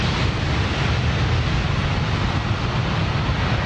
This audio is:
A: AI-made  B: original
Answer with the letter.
B